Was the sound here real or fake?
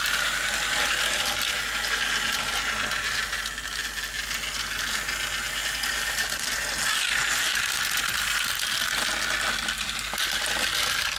real